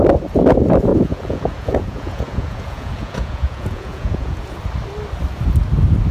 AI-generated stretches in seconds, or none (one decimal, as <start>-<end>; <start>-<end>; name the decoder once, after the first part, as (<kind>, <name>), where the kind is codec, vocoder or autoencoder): 0.9-4.6 (vocoder, Vocos)